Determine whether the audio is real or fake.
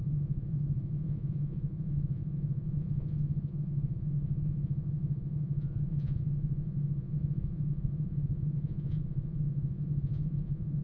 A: fake